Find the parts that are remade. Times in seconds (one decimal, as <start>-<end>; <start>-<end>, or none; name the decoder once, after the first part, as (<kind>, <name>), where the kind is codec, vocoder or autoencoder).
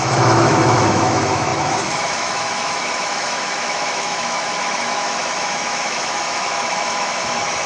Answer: 0.0-7.7 (autoencoder, DAC-VAE)